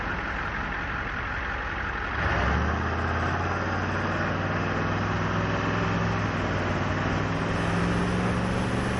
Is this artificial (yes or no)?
no